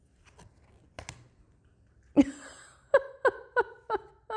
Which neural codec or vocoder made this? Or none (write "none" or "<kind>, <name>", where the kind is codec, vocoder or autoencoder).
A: none